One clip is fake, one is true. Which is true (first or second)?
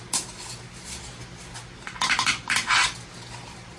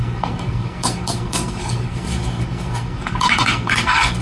first